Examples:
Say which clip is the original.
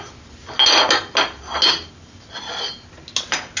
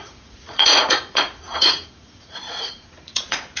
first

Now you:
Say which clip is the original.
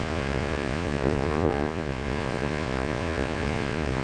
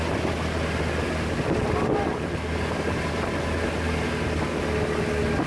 second